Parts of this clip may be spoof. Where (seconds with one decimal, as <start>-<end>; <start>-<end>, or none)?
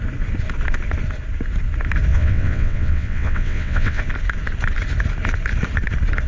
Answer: 2.1-4.0